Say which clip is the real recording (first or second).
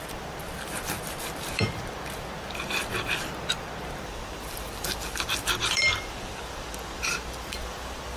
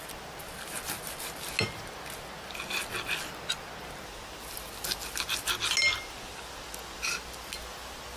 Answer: second